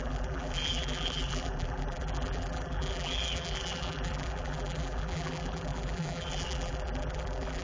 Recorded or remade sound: remade